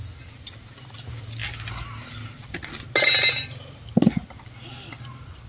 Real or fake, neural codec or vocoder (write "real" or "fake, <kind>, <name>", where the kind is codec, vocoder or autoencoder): real